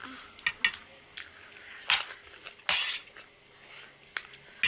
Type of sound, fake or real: real